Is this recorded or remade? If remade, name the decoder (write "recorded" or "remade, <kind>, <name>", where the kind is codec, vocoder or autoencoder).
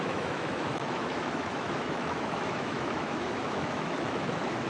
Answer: remade, autoencoder, DAC-VAE